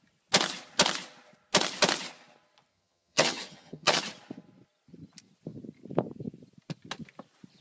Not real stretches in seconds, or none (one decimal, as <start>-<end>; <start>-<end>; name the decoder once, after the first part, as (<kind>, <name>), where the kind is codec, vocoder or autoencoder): 2.7-4.0 (vocoder, HiFi-GAN)